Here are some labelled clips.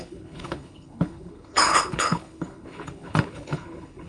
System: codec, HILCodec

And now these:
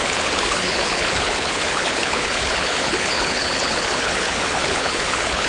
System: codec, HILCodec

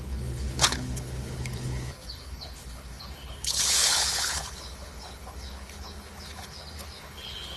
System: codec, HILCodec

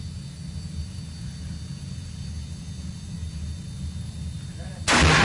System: none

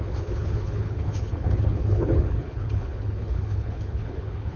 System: codec, HILCodec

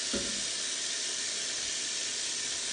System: none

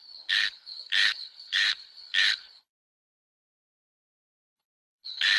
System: codec, HILCodec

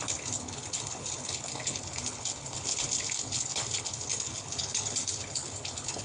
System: codec, HILCodec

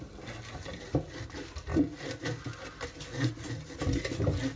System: none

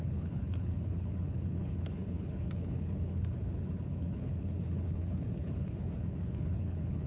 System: codec, HILCodec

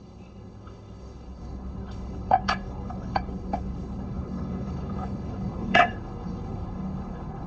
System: codec, HILCodec